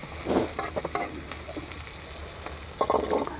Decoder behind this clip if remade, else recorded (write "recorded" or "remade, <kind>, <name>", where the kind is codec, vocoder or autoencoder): recorded